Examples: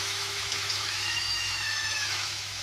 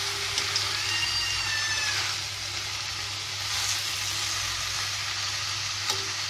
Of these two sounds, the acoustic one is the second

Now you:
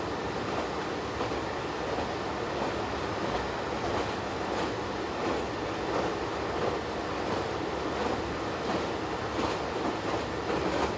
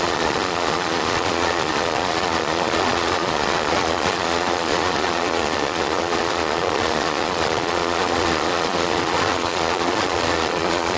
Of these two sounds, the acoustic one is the first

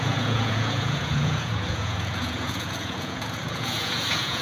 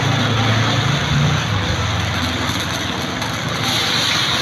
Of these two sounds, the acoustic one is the second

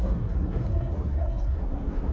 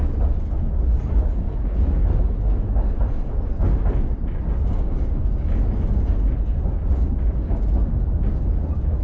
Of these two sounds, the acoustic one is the second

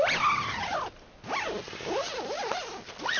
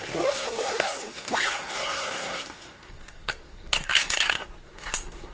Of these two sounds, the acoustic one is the first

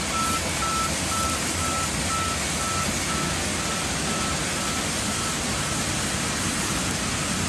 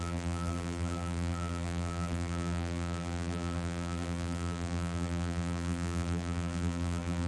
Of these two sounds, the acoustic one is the first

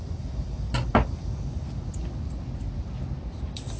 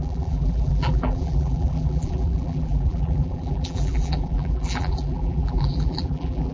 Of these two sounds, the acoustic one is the first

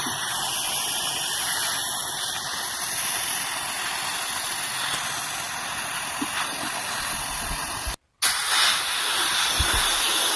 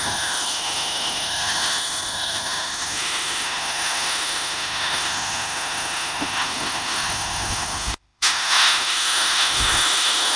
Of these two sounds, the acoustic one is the first